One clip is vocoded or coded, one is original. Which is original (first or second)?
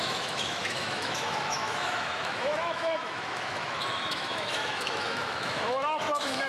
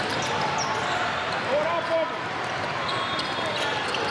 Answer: second